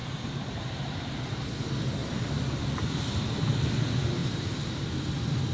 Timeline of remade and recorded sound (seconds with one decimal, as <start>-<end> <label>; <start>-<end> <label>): 0.0-1.0 remade; 1.0-4.2 recorded; 4.2-5.0 remade; 5.0-5.5 recorded